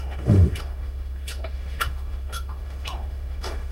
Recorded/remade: remade